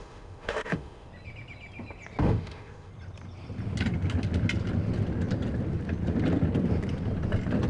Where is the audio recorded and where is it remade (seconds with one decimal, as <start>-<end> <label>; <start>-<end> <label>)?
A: 0.0-1.1 remade; 1.1-2.2 recorded; 2.2-2.9 remade; 2.9-7.7 recorded